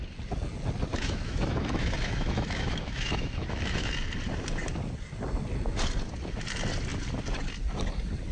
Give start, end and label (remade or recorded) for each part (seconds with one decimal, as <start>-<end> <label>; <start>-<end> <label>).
0.0-0.9 recorded; 0.9-3.9 remade; 3.9-8.3 recorded